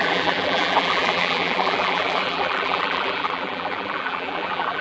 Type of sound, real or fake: fake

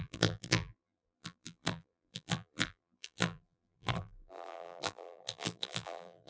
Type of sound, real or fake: fake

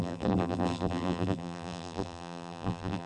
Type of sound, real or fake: fake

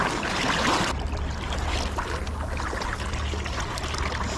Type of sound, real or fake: real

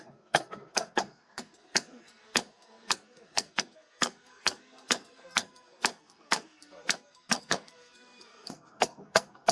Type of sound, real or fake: fake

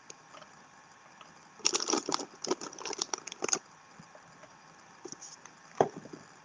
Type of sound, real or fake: real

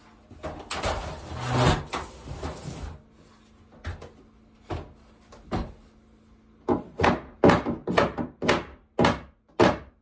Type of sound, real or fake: real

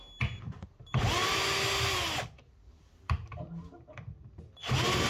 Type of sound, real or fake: real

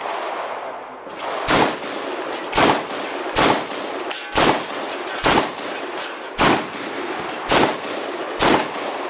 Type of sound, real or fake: real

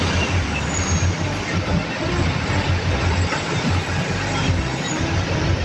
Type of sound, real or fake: real